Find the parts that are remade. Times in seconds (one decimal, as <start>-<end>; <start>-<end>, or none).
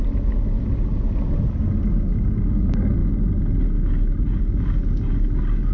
none